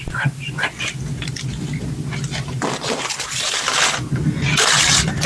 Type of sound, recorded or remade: recorded